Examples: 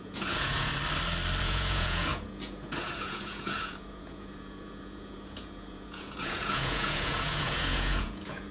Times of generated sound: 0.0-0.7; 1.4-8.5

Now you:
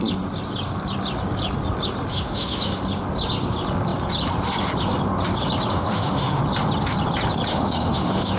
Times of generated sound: 2.1-2.8; 5.7-6.4; 7.5-8.4

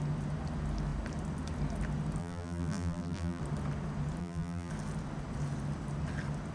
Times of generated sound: 2.2-3.4; 4.2-4.7

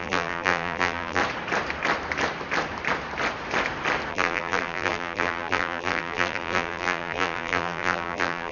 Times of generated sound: 0.0-1.2; 4.1-8.5

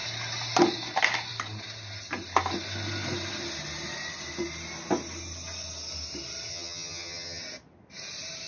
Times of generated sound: 6.5-7.4

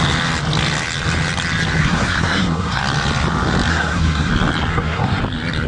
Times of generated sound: 1.8-2.8; 3.7-4.3; 4.7-5.2

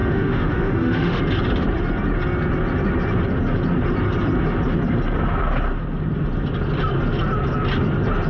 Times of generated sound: 0.0-1.2

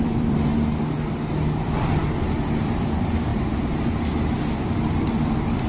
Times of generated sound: 0.0-0.5; 1.6-2.0; 2.6-5.7